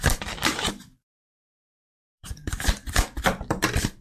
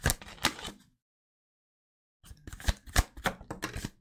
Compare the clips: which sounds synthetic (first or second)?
first